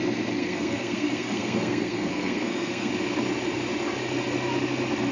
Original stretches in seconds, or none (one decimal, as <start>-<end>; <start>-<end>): 0.0-0.4; 2.9-5.1